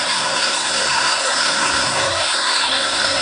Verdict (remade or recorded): remade